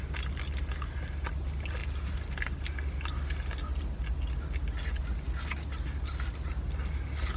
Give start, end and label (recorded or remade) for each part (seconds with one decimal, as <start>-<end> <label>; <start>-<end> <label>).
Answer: 0.0-7.4 recorded